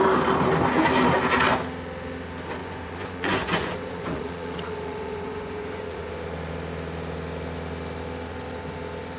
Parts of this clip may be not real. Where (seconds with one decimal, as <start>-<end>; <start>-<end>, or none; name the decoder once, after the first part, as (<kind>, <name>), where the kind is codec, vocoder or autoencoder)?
2.6-6.1 (vocoder, Vocos)